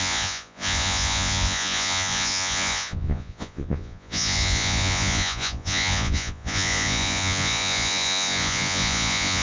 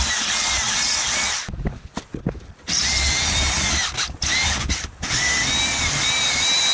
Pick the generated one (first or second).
first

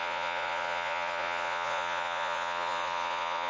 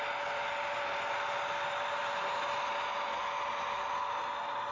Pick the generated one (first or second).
first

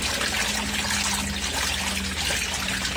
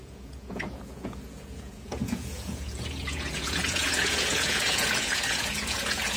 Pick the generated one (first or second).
second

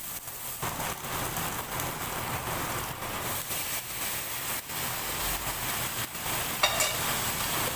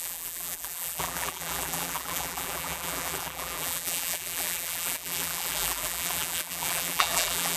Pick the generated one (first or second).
second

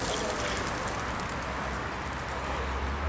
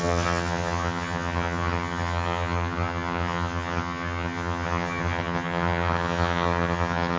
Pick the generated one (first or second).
second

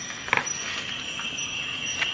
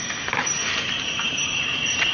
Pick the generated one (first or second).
second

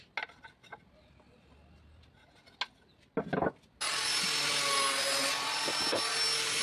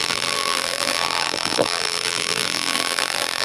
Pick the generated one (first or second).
second